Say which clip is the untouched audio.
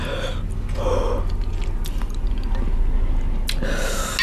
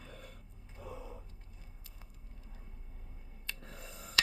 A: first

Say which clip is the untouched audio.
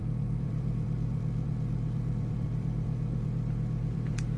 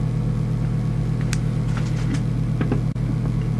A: second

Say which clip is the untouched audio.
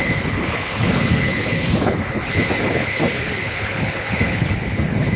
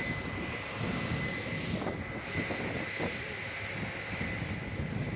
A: second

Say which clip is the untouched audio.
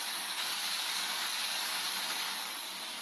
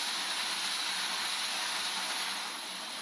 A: second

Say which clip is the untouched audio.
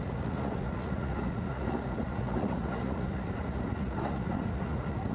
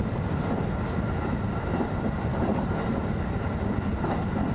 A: second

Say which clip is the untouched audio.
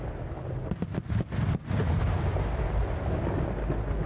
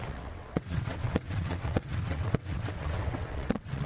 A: first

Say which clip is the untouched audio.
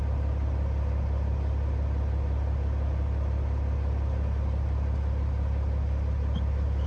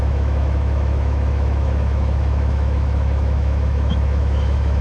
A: first